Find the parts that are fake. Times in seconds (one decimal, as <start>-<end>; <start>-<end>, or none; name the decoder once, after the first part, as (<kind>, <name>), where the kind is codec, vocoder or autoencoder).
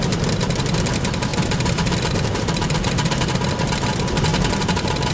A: 1.3-3.2 (vocoder, BigVGAN v2); 4.3-5.1